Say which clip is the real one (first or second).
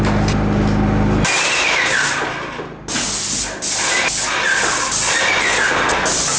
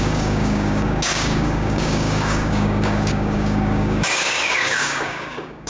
first